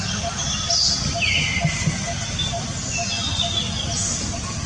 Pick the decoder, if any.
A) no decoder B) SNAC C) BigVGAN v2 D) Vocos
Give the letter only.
A